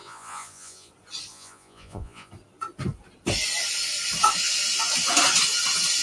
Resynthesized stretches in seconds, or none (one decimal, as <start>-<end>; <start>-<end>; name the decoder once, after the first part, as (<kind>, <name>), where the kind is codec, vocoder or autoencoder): 0.0-0.9 (vocoder, Vocos); 1.3-2.3